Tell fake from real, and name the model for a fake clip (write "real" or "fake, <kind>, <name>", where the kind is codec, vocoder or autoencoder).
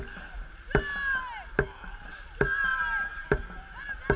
real